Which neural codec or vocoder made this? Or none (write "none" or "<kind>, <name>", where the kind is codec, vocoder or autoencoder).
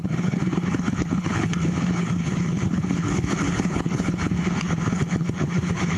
codec, HILCodec